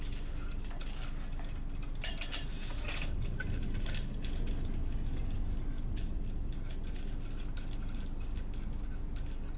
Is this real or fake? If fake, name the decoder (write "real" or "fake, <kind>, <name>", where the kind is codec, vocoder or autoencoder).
real